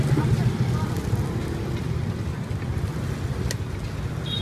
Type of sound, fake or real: real